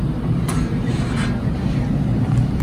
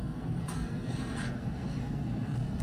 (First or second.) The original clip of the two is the first